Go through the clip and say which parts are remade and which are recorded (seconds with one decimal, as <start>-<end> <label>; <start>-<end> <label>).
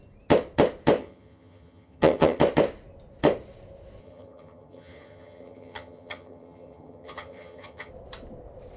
0.0-1.0 recorded; 1.0-2.4 remade; 2.4-4.0 recorded; 4.0-7.9 remade; 7.9-8.8 recorded